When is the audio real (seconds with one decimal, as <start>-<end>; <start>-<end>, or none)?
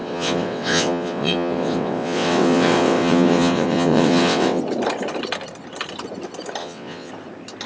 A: 4.6-6.6; 7.1-7.7